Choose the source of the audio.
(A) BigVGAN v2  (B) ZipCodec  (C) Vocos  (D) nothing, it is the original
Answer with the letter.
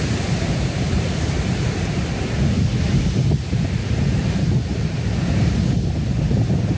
D